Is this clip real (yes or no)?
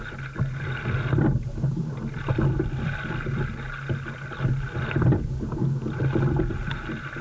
yes